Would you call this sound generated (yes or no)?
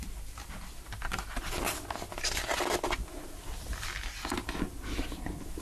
no